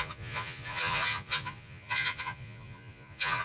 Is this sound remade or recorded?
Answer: remade